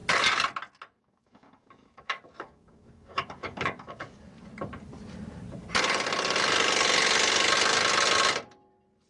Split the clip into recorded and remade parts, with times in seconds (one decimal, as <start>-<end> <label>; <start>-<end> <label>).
0.0-1.0 recorded; 1.0-4.3 remade; 4.3-9.1 recorded